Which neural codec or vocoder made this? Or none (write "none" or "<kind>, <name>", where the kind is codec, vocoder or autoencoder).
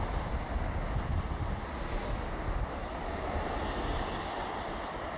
none